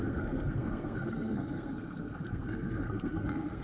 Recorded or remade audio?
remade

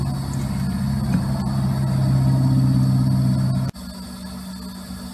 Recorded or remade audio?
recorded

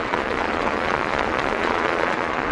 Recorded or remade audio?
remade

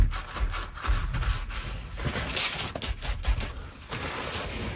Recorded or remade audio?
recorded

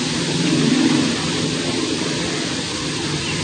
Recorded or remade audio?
remade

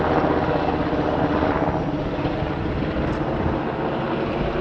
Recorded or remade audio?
recorded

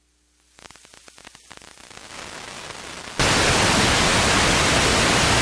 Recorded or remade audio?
recorded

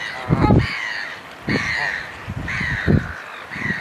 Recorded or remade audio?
recorded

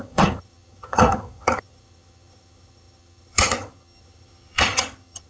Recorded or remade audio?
remade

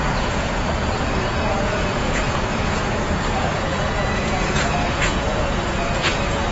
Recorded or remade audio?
remade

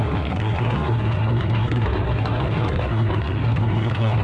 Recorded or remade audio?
remade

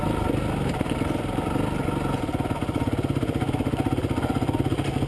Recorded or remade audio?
recorded